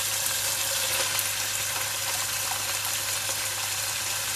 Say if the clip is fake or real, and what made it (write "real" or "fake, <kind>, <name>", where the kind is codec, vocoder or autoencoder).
real